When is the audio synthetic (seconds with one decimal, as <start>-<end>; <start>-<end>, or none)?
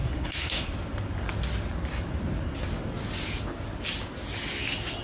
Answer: 0.0-0.7